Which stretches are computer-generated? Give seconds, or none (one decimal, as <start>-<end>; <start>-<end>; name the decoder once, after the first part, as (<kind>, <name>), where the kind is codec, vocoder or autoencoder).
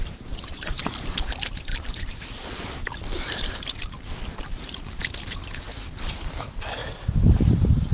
0.0-5.0 (vocoder, BigVGAN v2); 5.9-6.8; 7.4-7.9